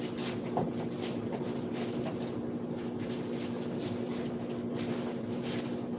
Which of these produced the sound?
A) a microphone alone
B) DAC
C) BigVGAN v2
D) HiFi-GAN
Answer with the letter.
A